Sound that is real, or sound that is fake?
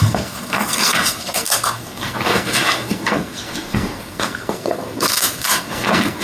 fake